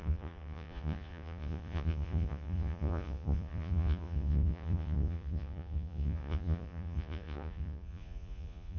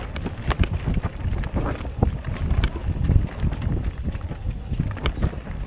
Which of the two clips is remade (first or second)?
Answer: first